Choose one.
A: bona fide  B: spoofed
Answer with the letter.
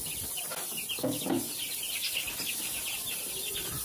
A